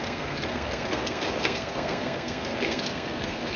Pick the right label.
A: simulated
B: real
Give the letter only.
A